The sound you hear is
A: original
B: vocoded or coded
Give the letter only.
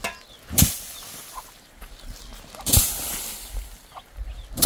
A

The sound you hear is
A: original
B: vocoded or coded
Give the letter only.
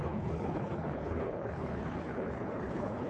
B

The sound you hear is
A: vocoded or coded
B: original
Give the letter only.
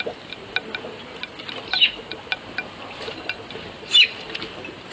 B